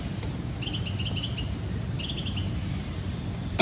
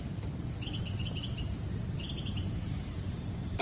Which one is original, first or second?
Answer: first